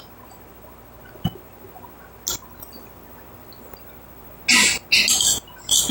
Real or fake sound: real